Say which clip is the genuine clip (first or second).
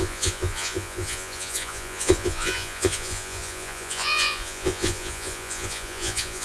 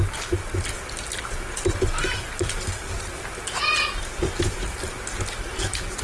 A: second